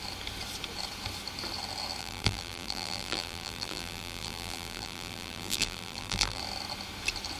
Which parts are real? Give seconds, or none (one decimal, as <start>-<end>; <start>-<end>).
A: 0.0-2.0; 6.4-7.4